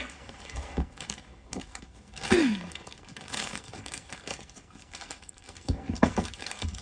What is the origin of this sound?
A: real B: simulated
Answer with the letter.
B